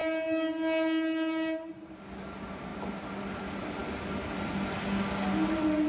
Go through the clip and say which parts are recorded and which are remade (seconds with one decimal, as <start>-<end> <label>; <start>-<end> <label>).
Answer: 0.0-5.9 recorded